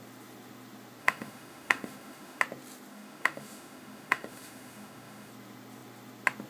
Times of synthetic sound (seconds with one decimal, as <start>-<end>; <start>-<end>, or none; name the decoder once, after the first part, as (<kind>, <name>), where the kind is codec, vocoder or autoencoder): 1.0-2.4 (autoencoder, DAC-VAE); 2.9-5.3